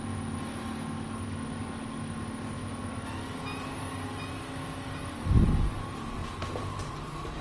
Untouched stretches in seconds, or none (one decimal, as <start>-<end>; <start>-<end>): 0.0-7.4

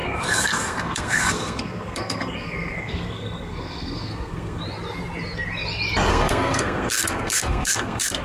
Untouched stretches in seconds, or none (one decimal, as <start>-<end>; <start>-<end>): 4.6-6.1

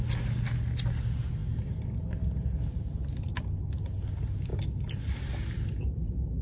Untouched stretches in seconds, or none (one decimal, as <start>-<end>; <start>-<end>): 0.0-6.4

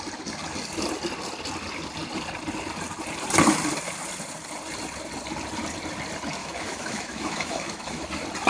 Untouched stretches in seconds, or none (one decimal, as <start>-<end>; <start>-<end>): 0.0-6.4; 8.1-8.5

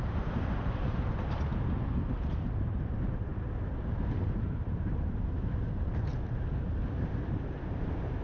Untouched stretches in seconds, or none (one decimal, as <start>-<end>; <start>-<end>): 1.5-2.0; 3.3-3.8; 6.1-7.7